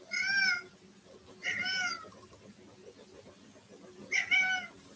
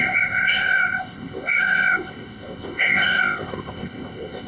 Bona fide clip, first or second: first